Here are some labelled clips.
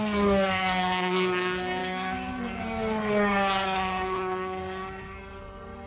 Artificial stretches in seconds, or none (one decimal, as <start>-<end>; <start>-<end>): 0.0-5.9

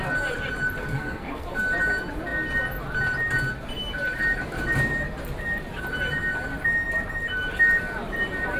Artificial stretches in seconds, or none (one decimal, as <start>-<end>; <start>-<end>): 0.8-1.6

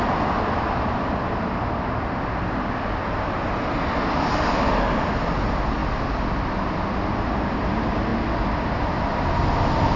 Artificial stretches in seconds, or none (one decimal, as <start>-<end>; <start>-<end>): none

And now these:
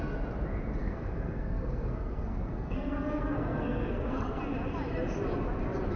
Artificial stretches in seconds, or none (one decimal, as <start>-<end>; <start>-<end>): 0.8-4.4

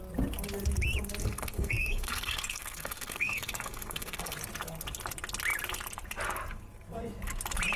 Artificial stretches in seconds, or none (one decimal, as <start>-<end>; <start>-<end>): 1.2-4.4

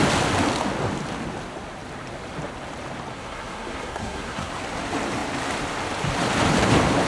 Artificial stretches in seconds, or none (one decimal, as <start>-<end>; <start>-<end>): 3.1-4.5

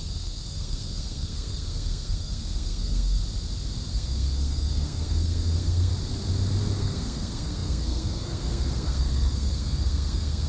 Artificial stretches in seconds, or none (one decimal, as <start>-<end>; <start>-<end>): 0.0-3.2; 3.9-5.9; 6.8-10.5

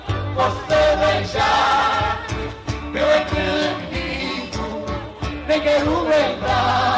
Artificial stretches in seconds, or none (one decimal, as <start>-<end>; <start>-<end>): 2.4-4.2